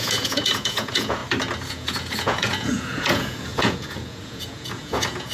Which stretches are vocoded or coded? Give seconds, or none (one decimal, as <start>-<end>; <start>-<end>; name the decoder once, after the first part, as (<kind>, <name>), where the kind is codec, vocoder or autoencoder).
0.0-1.2 (vocoder, Vocos); 1.7-5.3